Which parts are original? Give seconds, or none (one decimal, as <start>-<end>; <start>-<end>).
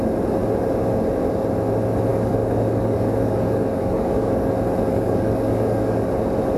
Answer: 0.0-2.1; 4.5-4.9; 6.1-6.6